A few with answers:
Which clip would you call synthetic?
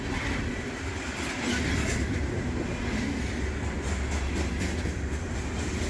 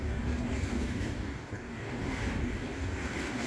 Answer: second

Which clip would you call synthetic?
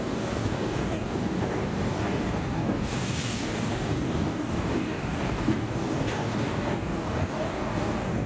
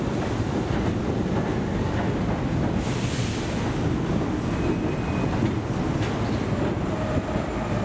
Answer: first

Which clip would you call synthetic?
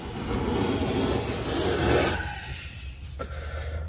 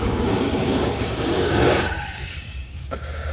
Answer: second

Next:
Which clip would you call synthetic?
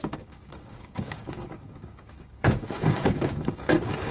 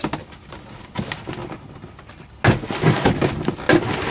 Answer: first